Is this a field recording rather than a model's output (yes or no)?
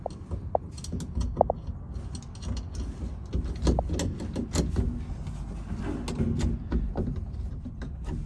yes